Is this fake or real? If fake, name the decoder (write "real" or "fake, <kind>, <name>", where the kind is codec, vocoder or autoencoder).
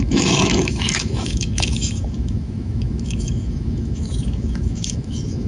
fake, autoencoder, DAC-VAE